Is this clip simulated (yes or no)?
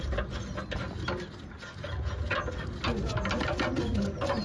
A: no